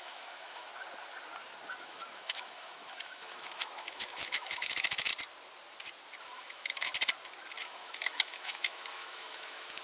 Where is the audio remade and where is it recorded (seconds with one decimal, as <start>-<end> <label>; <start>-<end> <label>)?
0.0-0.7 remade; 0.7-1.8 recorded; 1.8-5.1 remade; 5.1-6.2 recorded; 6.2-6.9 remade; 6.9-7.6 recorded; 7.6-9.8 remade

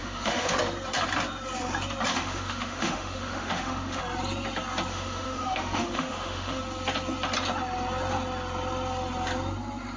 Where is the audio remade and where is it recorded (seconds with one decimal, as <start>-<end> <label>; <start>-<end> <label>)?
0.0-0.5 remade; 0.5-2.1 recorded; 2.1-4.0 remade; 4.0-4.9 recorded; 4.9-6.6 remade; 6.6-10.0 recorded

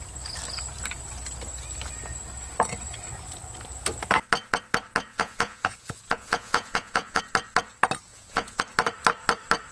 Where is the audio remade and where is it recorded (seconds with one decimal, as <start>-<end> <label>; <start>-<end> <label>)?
0.0-5.1 recorded; 5.1-7.2 remade; 7.2-8.1 recorded; 8.1-8.6 remade; 8.6-9.7 recorded